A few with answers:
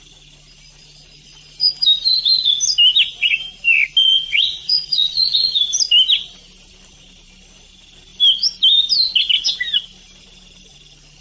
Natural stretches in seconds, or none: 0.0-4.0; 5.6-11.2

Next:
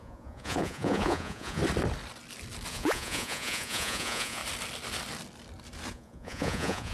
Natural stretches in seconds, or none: 1.6-2.7; 4.4-5.9

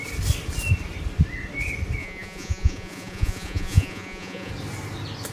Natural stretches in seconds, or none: 0.0-2.0; 4.5-5.3

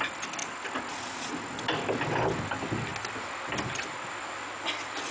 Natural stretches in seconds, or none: 0.0-5.1

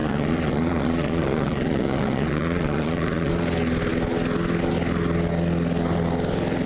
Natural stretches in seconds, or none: 3.3-6.7

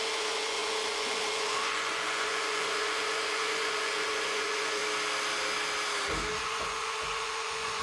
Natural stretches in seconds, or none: 4.8-6.4